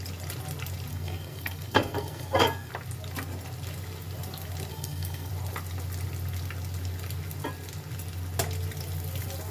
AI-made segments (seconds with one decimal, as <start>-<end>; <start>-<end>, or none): 0.9-2.7; 4.7-5.3